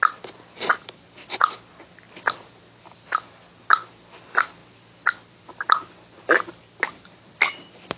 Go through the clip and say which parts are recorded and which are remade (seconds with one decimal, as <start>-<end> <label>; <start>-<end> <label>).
0.0-8.0 recorded